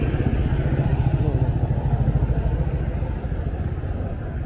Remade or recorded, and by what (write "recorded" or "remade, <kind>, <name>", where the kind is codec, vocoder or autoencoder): recorded